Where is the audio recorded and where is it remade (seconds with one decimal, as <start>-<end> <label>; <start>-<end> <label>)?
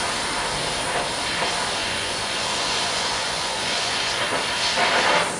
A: 0.0-1.8 recorded; 1.8-4.2 remade; 4.2-5.4 recorded